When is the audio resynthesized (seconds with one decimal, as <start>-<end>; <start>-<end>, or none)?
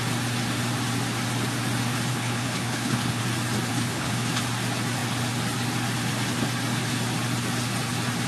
2.1-3.2; 3.7-4.3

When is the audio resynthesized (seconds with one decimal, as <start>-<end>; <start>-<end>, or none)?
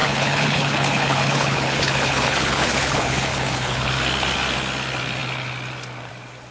0.0-3.9